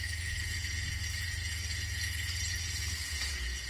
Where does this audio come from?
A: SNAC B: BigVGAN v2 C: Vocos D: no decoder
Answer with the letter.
C